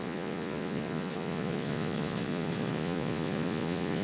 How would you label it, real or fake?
fake